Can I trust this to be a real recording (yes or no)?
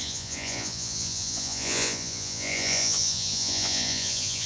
no